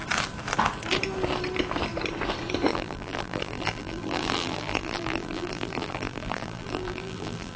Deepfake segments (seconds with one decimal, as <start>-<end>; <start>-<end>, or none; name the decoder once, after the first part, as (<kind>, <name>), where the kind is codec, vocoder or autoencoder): 2.7-7.6 (vocoder, BigVGAN v2)